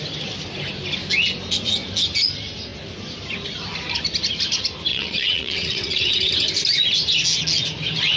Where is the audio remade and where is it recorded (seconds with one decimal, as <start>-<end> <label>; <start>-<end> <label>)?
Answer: 0.0-4.9 recorded; 4.9-6.3 remade; 6.3-8.2 recorded